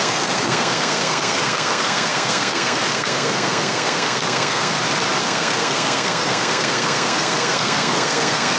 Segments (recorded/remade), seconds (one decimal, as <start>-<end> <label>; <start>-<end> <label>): 0.0-4.7 remade; 4.7-5.2 recorded; 5.2-8.6 remade